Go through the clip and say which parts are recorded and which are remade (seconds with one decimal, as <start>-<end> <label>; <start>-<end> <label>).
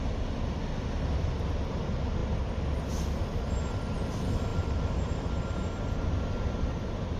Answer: 0.0-4.5 recorded; 4.5-6.1 remade; 6.1-7.2 recorded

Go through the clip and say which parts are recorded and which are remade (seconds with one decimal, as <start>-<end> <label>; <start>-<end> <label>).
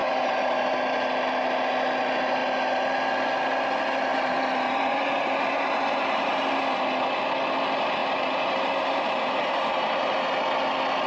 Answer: 0.0-0.8 remade; 0.8-4.1 recorded; 4.1-6.6 remade; 6.6-8.0 recorded; 8.0-10.6 remade; 10.6-11.1 recorded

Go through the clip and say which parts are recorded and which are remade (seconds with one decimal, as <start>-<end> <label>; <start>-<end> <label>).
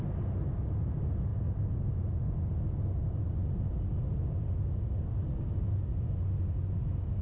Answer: 0.0-7.2 recorded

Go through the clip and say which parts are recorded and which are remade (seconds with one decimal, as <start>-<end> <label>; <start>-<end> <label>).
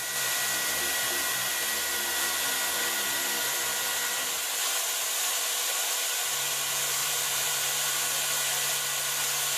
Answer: 0.0-7.0 recorded; 7.0-7.5 remade; 7.5-9.6 recorded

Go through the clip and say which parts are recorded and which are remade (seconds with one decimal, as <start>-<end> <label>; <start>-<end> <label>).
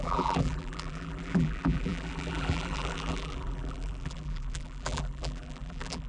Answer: 0.0-6.1 remade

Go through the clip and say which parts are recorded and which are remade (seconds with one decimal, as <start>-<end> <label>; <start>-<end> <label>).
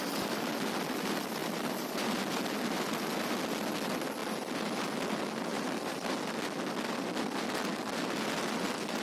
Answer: 0.0-1.4 recorded; 1.4-2.4 remade; 2.4-9.0 recorded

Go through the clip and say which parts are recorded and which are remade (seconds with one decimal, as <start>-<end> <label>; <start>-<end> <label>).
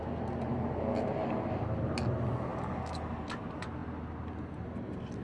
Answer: 0.0-5.2 recorded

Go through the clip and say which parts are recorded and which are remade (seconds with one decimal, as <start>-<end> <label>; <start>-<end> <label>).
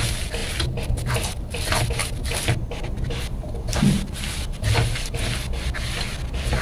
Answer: 0.0-0.4 recorded; 0.4-1.6 remade; 1.6-6.6 recorded